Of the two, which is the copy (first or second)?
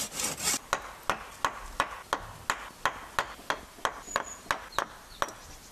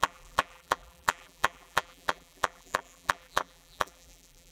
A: second